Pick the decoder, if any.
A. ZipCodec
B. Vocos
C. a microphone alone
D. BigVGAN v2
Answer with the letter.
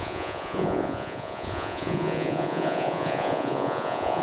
B